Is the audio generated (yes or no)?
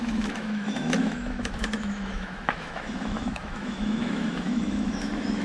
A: yes